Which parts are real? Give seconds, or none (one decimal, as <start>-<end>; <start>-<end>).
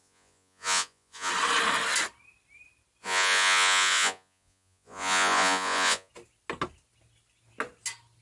1.3-3.0; 6.1-8.2